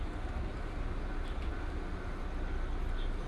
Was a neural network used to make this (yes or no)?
no